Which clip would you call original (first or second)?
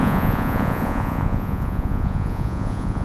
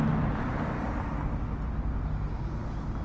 second